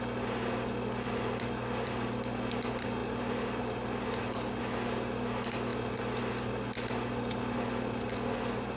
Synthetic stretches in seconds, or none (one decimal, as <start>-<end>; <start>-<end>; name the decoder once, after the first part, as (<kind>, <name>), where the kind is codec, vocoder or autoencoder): none